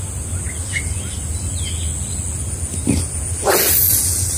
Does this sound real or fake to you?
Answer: real